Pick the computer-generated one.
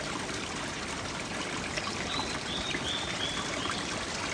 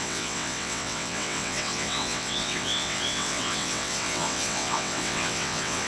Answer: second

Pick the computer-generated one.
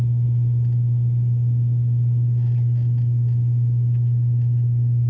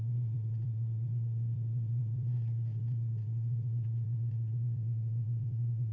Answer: second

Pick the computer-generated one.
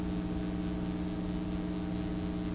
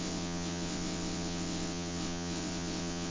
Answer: second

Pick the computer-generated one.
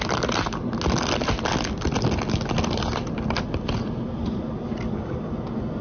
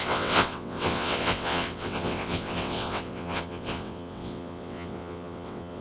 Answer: second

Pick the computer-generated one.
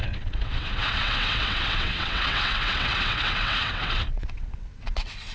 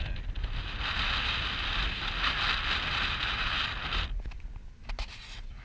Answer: first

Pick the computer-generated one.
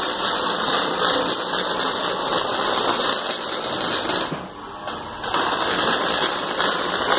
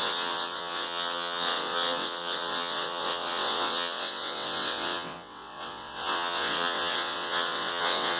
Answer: second